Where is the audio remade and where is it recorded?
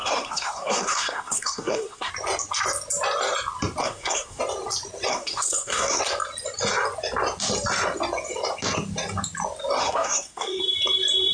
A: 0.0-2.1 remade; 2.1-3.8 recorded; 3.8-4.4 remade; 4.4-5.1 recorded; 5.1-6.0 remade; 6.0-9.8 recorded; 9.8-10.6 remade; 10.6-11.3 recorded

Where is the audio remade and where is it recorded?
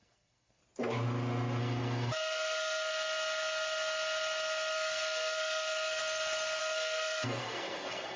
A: 0.0-0.6 remade; 0.6-1.6 recorded; 1.6-2.9 remade; 2.9-4.7 recorded; 4.7-6.0 remade; 6.0-6.6 recorded; 6.6-8.2 remade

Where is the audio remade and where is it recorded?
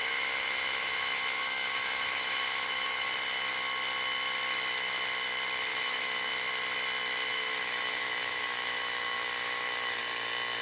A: 0.0-3.1 remade; 3.1-5.7 recorded; 5.7-6.3 remade; 6.3-7.3 recorded; 7.3-10.0 remade; 10.0-10.6 recorded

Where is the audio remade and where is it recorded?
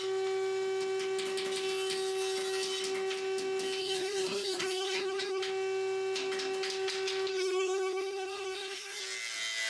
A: 0.0-3.8 recorded; 3.8-5.4 remade; 5.4-7.3 recorded; 7.3-9.0 remade; 9.0-9.7 recorded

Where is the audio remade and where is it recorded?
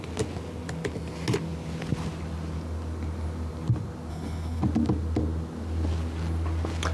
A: 0.0-4.1 recorded; 4.1-4.6 remade; 4.6-6.9 recorded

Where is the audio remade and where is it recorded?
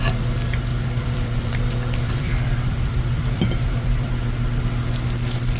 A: 0.0-0.7 recorded; 0.7-4.1 remade; 4.1-5.6 recorded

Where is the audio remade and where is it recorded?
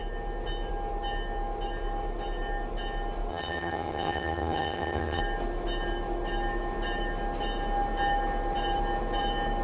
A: 0.0-3.3 recorded; 3.3-5.2 remade; 5.2-9.6 recorded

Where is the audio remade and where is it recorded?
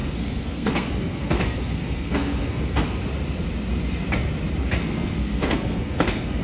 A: 0.0-3.0 remade; 3.0-4.8 recorded; 4.8-6.4 remade